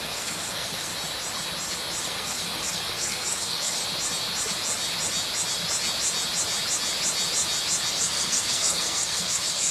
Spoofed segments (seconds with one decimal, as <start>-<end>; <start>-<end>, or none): 0.0-0.9; 2.0-3.8; 7.9-9.7